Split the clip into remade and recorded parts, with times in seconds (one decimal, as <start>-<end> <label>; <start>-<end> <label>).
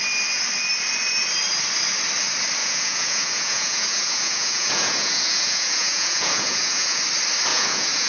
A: 0.0-2.6 recorded; 2.6-7.0 remade; 7.0-7.5 recorded; 7.5-8.1 remade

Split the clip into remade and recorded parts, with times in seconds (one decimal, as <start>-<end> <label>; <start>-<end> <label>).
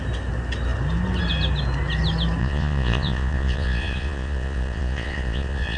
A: 0.0-2.4 recorded; 2.4-5.8 remade